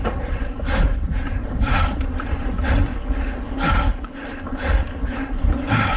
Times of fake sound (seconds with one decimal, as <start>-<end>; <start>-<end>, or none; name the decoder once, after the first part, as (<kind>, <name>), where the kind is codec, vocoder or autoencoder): 0.0-2.9 (vocoder, BigVGAN v2); 4.4-6.0